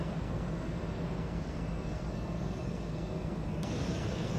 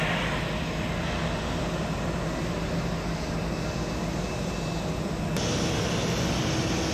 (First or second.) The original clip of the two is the second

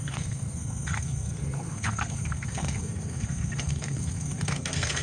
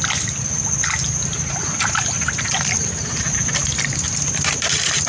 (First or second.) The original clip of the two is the second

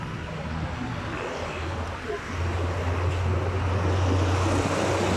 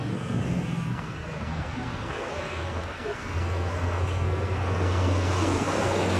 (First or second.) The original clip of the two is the first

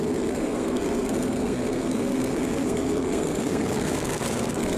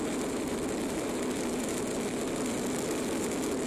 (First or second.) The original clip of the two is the second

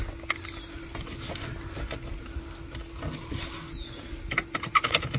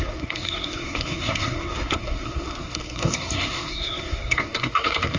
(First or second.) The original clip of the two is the first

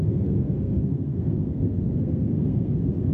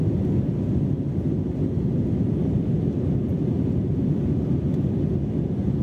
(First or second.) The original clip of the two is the second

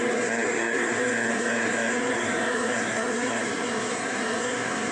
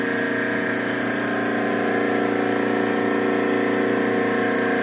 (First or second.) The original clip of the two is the second